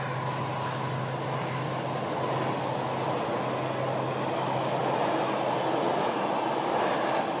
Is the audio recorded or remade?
recorded